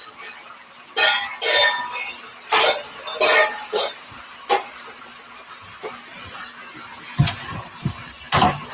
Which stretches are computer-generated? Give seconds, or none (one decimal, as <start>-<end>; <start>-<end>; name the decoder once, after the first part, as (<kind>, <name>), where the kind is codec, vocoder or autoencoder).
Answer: 3.1-4.3 (vocoder, BigVGAN v2)